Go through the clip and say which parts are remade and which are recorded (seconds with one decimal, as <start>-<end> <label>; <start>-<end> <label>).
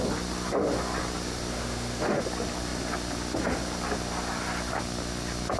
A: 0.0-1.5 recorded; 1.5-2.2 remade; 2.2-5.6 recorded